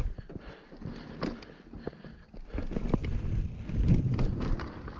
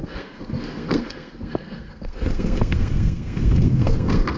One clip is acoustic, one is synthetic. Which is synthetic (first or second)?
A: second